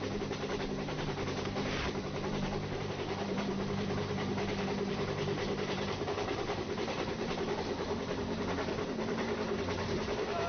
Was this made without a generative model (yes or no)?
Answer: no